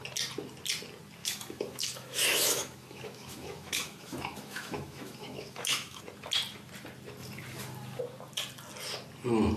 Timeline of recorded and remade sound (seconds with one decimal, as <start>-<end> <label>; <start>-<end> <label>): 0.0-1.2 recorded; 1.2-6.0 remade; 6.0-9.6 recorded